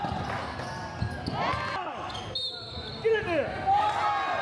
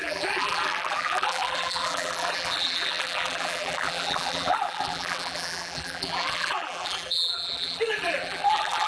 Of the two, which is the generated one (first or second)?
second